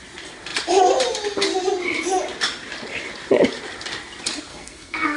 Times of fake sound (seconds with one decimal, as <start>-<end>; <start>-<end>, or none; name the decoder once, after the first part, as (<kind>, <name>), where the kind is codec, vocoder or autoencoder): 4.5-5.2 (codec, SNAC)